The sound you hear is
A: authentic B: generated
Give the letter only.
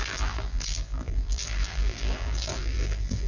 B